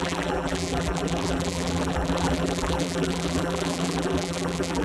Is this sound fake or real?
fake